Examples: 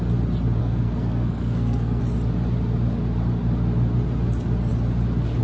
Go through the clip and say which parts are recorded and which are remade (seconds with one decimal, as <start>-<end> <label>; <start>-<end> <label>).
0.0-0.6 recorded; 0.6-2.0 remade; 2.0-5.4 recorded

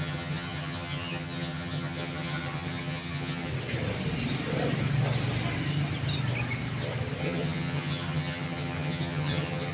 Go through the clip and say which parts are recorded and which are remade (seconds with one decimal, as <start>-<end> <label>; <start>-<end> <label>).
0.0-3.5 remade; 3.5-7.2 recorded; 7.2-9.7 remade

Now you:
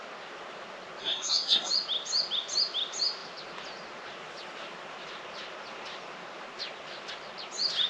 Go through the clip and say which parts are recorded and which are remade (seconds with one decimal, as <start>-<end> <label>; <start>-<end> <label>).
0.0-1.0 recorded; 1.0-1.7 remade; 1.7-7.9 recorded

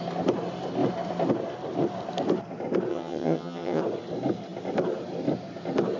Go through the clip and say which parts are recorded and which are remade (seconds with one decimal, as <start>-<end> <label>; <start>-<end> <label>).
0.0-2.9 recorded; 2.9-3.8 remade; 3.8-6.0 recorded

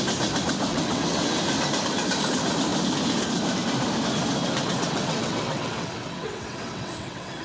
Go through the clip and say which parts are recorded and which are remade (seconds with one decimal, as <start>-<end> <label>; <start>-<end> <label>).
0.0-0.7 recorded; 0.7-1.4 remade; 1.4-4.4 recorded; 4.4-7.4 remade